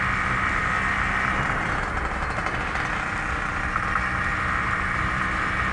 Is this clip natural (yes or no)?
yes